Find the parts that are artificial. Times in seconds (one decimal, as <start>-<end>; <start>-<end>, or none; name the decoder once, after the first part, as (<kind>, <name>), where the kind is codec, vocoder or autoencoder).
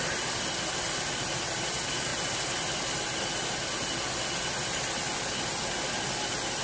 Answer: none